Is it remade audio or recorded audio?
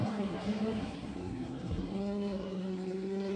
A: remade